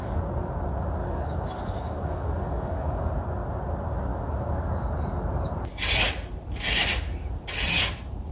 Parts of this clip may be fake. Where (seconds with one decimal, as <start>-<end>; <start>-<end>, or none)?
1.0-3.1